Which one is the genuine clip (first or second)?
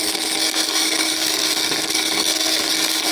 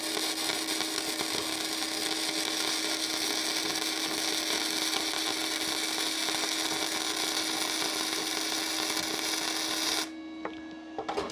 second